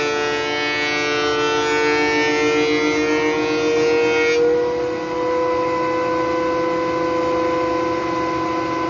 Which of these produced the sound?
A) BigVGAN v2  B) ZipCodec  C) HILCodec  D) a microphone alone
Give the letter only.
D